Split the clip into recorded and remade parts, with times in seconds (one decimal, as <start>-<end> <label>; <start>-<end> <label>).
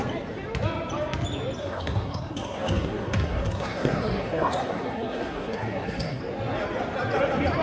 0.0-1.6 recorded; 1.6-6.2 remade; 6.2-7.6 recorded